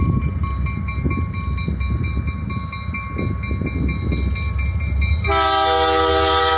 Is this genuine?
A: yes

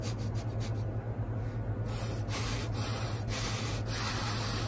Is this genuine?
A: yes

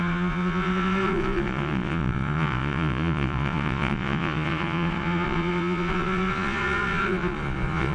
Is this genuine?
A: no